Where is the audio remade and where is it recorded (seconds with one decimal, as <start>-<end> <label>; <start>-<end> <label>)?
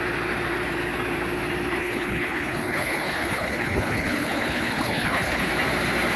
0.0-1.8 recorded; 1.8-5.5 remade; 5.5-6.2 recorded